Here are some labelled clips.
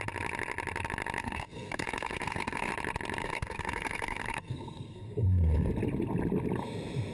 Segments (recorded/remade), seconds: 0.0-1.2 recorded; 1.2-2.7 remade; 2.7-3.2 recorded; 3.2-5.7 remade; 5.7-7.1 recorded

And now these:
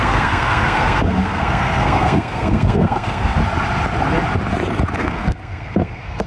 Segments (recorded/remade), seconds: 0.0-3.4 remade; 3.4-5.0 recorded; 5.0-6.3 remade

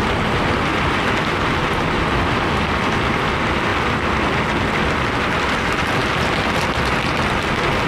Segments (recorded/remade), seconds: 0.0-7.9 recorded

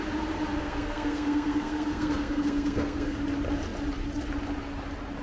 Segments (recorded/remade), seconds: 0.0-0.6 recorded; 0.6-3.2 remade; 3.2-5.2 recorded

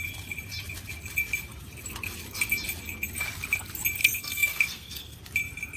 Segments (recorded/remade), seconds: 0.0-4.0 recorded; 4.0-5.2 remade; 5.2-5.8 recorded

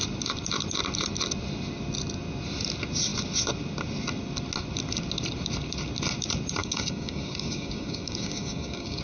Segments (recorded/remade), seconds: 0.0-6.6 recorded; 6.6-9.0 remade

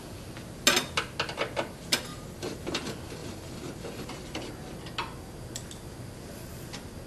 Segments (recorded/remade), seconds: 0.0-2.1 recorded; 2.1-2.8 remade; 2.8-3.2 recorded; 3.2-4.5 remade; 4.5-7.1 recorded